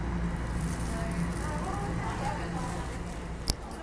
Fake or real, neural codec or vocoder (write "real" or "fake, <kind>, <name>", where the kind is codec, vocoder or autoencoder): real